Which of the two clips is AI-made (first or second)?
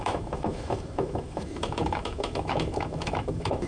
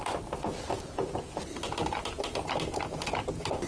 first